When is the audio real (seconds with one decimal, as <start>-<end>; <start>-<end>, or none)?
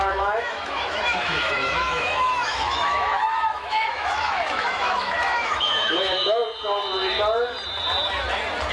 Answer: 6.4-8.7